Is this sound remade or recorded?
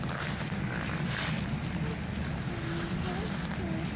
recorded